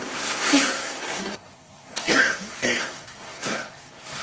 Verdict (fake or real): fake